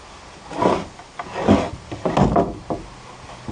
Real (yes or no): yes